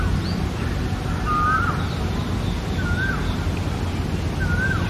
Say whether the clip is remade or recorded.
recorded